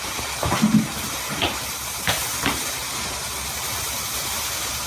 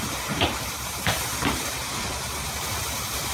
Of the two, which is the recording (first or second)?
first